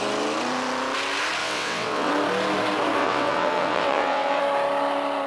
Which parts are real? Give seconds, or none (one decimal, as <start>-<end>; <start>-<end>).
0.0-1.4; 2.1-3.0; 4.4-5.3